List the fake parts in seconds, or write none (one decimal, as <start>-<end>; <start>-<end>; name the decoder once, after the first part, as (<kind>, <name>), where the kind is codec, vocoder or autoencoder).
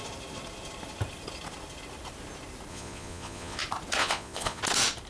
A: 2.7-3.6 (vocoder, Vocos); 4.0-4.6